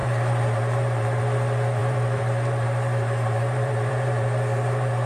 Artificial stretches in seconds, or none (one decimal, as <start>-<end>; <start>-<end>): 0.0-1.2; 1.8-5.1